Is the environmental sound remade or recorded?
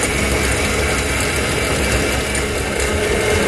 recorded